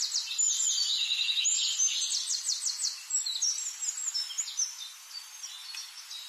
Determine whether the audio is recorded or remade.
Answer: recorded